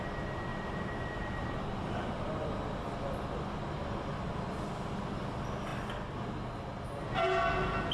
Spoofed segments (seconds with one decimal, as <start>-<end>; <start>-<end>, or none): 0.5-2.1